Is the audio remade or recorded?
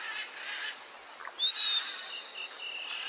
recorded